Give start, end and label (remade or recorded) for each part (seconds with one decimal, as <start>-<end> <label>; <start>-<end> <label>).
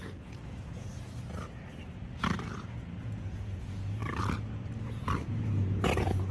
0.0-0.9 remade; 0.9-2.6 recorded; 2.6-4.0 remade; 4.0-5.3 recorded; 5.3-6.3 remade